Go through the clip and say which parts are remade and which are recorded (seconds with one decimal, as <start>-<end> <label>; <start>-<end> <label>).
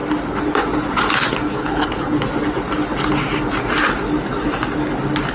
0.0-1.6 recorded; 1.6-2.2 remade; 2.2-5.3 recorded